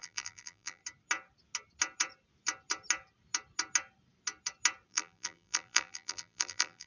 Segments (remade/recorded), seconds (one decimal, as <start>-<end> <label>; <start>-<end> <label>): 0.0-0.8 remade; 0.8-4.9 recorded; 4.9-6.9 remade